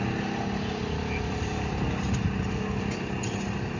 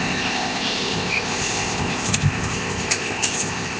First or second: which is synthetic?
second